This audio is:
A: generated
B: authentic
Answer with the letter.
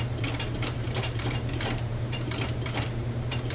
A